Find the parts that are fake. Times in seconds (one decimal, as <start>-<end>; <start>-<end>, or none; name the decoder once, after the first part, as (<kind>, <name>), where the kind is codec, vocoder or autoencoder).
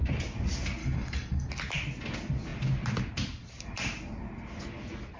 0.8-1.5 (codec, DAC)